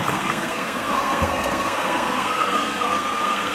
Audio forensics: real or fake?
fake